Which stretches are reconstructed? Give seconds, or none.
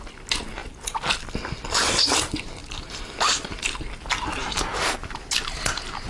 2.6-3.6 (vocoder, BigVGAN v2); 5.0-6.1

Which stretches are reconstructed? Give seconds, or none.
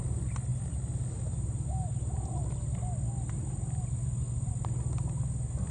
none